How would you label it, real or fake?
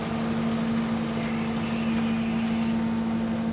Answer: real